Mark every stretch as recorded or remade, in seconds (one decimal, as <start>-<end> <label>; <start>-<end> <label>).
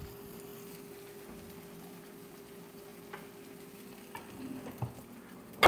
0.0-5.7 recorded